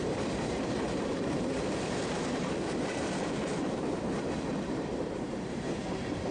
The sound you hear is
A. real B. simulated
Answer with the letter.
B